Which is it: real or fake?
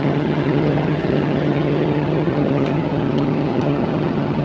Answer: fake